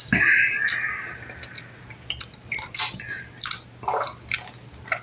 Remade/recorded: recorded